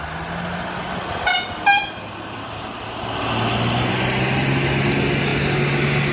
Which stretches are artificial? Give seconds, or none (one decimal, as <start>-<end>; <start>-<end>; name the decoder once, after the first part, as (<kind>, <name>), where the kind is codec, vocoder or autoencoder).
none